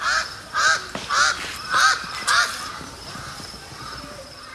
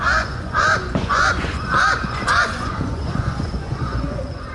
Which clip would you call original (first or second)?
first